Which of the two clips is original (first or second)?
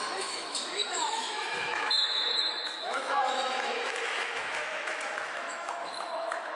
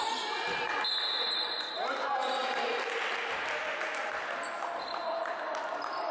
second